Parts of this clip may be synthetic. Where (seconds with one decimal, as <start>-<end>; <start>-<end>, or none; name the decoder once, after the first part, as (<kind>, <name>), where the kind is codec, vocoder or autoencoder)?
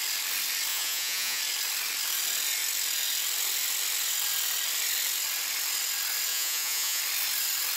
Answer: 0.7-1.4 (vocoder, Vocos); 6.3-7.0